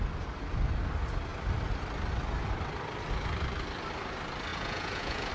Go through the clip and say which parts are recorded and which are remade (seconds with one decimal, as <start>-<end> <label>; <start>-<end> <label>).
0.0-4.5 recorded; 4.5-5.3 remade